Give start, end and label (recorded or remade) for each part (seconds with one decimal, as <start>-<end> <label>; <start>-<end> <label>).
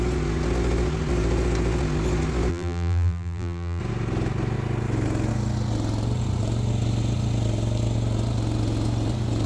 0.0-2.5 recorded; 2.5-3.8 remade; 3.8-9.5 recorded